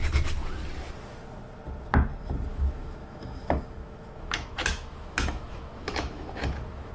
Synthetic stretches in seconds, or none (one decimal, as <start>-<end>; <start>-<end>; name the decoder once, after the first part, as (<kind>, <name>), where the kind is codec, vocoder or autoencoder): 2.5-6.9 (autoencoder, DAC-VAE)